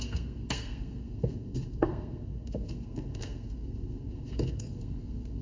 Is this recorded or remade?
remade